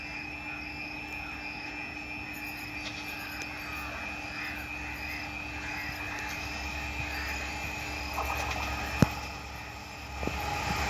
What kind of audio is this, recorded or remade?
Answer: recorded